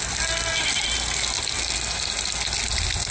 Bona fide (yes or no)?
yes